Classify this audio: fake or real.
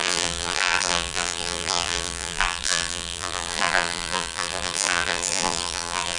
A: fake